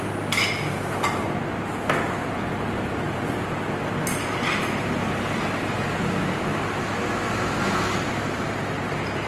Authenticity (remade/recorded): recorded